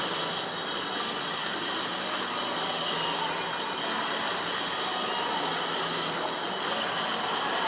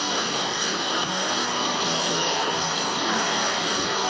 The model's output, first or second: second